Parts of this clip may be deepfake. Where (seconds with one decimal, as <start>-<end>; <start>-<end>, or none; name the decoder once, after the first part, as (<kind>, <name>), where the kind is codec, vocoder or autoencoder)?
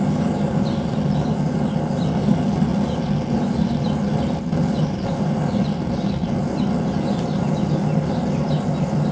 none